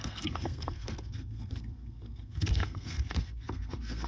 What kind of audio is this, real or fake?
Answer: fake